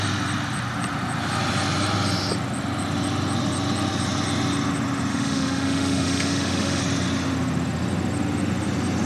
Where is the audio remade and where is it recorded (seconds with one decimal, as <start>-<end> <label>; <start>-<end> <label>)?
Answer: 0.0-5.1 recorded; 5.1-6.8 remade; 6.8-9.1 recorded